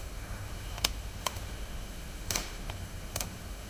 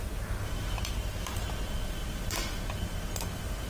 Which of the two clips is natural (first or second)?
second